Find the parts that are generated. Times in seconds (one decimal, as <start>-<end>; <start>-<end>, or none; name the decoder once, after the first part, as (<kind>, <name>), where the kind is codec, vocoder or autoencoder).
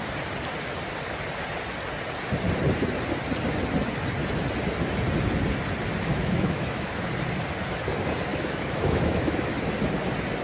6.1-7.1 (autoencoder, DAC-VAE); 8.3-9.5